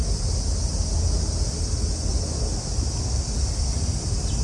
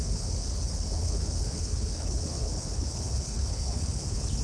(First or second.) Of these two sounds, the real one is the first